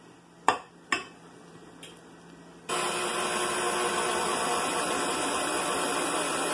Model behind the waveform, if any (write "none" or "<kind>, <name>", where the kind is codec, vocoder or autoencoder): none